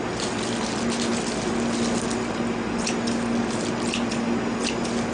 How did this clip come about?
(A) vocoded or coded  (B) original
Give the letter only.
B